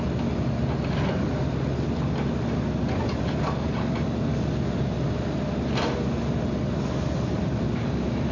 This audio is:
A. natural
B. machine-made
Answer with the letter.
A